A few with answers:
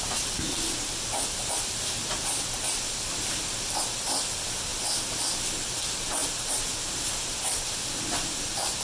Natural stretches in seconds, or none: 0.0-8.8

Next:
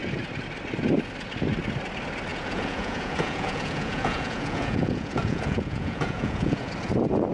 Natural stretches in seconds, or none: 0.0-2.3; 6.7-7.3

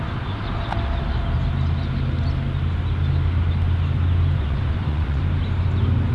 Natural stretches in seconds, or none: 0.0-4.4; 5.2-6.1

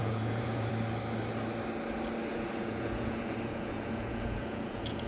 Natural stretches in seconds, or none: 0.7-2.3